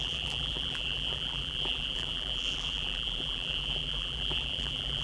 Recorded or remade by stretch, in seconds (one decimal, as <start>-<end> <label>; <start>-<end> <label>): 0.0-5.0 remade